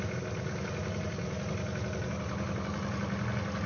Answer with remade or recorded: recorded